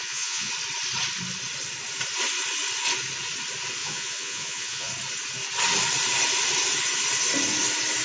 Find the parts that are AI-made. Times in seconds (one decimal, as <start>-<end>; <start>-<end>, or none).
0.0-0.5; 3.8-4.9

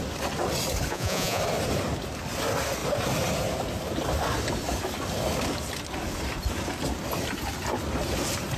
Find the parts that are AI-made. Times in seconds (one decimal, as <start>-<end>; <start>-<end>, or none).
0.9-1.4

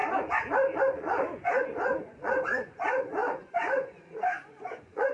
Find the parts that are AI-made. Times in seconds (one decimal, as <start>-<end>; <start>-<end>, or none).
0.8-5.1